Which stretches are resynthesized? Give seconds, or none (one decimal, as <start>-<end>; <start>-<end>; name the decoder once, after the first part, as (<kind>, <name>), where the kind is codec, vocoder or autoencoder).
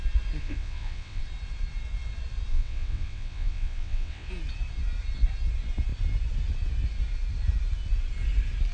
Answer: 0.4-1.2 (vocoder, WaveNeXt); 2.5-4.3